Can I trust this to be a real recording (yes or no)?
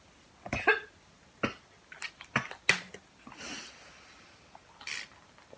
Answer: yes